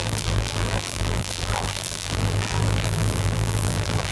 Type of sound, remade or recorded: remade